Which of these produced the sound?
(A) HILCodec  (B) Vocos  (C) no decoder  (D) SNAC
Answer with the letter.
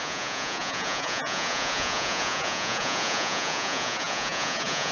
B